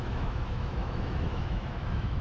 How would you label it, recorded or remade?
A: remade